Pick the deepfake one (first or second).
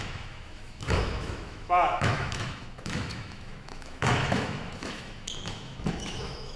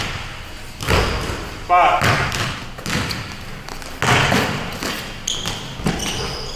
first